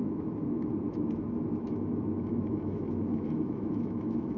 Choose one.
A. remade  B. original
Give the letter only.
A